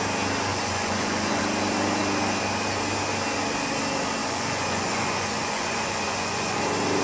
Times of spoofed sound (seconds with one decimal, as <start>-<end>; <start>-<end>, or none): 0.5-1.4; 4.2-6.6